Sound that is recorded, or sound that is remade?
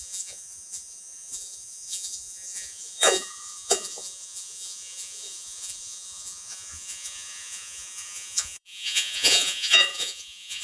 remade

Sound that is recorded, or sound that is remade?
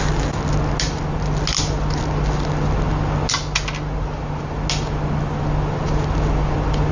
recorded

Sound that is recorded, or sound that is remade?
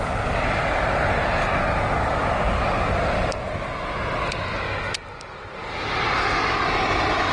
recorded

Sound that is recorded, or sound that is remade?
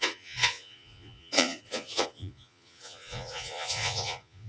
remade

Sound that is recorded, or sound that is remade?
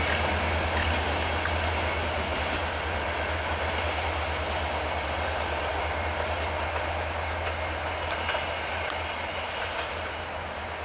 recorded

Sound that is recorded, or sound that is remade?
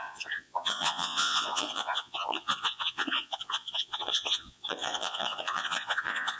remade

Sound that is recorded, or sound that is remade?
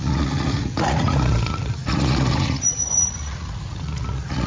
remade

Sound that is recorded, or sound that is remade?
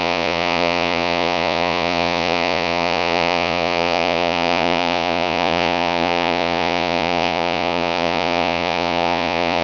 remade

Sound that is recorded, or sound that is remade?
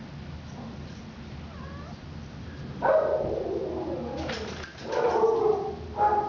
recorded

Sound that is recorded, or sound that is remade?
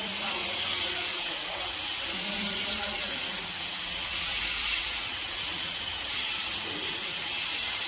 remade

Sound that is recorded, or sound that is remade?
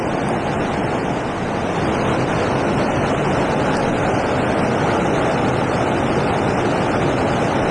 recorded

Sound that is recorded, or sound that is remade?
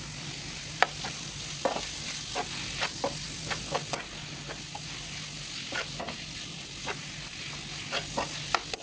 recorded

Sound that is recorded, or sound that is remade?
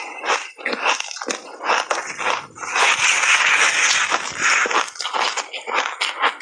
recorded